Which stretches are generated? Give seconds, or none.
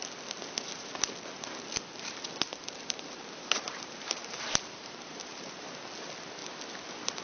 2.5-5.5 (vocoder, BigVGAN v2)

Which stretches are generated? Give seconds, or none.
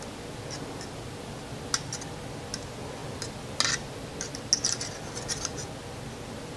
none